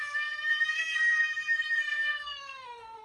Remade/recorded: remade